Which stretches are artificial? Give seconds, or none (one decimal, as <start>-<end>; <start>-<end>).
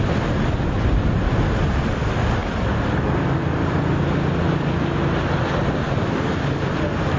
none